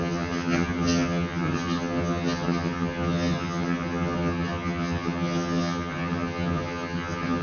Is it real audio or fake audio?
fake